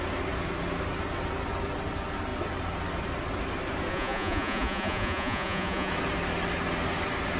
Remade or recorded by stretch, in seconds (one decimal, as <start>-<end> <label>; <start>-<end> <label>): 0.0-3.9 recorded; 3.9-5.9 remade; 5.9-7.4 recorded